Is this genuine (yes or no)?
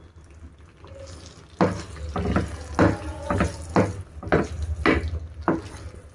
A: yes